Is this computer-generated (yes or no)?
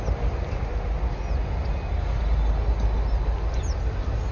no